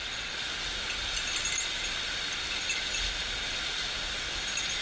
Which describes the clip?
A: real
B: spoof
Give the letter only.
A